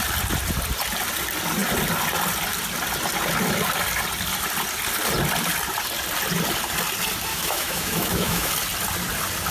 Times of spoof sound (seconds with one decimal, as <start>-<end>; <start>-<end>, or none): 7.3-8.5